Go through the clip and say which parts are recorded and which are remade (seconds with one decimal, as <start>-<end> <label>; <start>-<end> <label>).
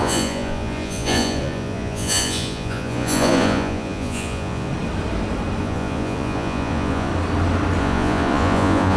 0.0-4.7 remade; 4.7-5.6 recorded; 5.6-7.1 remade; 7.1-7.8 recorded; 7.8-9.0 remade